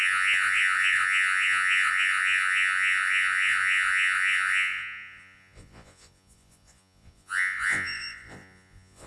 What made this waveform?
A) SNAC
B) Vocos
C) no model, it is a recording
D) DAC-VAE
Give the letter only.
B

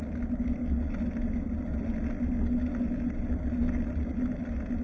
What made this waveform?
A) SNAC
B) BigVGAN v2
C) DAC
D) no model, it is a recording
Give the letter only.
D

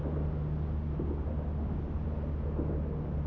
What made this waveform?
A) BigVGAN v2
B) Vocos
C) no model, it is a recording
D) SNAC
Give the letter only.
C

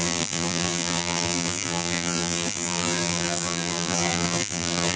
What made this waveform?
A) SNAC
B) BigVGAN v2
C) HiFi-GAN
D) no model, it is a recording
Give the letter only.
B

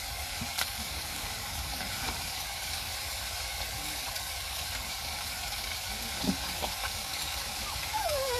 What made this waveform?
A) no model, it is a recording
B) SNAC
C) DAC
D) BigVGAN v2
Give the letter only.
C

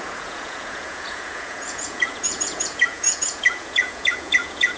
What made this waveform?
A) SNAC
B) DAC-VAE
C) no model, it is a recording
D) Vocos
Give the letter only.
D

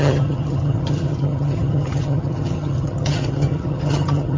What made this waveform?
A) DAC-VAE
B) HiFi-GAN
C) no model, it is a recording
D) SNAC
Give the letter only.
B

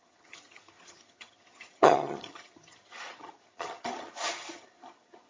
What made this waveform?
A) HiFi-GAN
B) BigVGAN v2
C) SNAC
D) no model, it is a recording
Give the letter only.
A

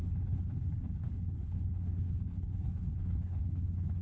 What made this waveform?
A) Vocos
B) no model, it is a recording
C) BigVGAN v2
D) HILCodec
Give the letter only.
D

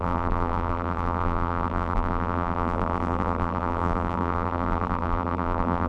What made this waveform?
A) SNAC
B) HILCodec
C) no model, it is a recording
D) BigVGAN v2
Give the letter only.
D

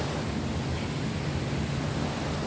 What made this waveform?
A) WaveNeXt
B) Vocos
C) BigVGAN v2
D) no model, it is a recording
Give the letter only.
D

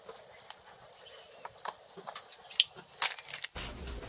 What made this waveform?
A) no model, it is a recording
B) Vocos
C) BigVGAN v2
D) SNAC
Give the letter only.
A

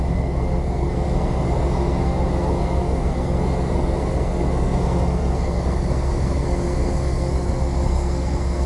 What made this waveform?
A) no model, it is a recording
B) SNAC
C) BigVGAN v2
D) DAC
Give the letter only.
B